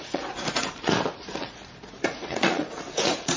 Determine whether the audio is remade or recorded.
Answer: remade